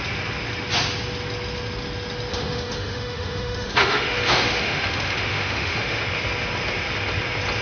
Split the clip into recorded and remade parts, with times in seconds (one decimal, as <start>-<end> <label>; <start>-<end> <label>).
0.0-2.3 recorded; 2.3-6.0 remade; 6.0-7.6 recorded

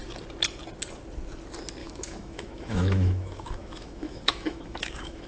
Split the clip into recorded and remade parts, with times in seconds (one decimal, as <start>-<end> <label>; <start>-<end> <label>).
0.0-1.8 recorded; 1.8-5.3 remade

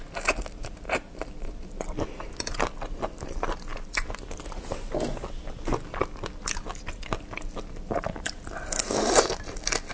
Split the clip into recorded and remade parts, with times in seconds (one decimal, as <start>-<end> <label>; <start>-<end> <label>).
0.0-9.9 recorded